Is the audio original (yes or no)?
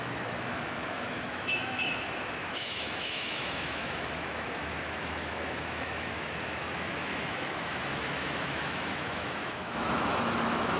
no